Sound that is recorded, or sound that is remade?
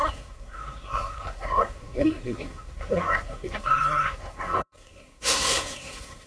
remade